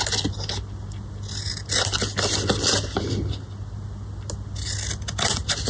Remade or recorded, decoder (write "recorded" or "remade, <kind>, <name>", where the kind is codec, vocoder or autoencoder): recorded